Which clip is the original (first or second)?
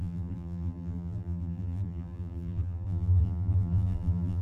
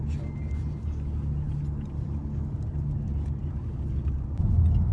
second